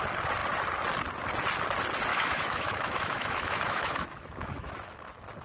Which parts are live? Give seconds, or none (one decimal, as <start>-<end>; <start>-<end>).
0.0-2.1; 4.7-5.4